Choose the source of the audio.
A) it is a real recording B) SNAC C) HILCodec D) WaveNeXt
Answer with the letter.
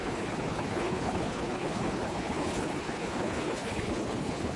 C